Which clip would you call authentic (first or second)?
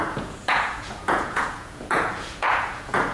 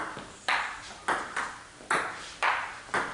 second